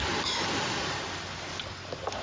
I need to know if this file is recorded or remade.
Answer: recorded